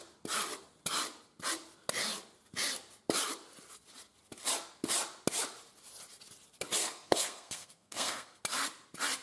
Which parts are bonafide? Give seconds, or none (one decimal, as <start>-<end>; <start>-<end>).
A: 0.0-6.8; 8.4-9.2